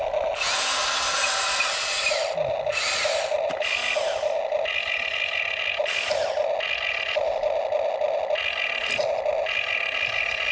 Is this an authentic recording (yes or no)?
yes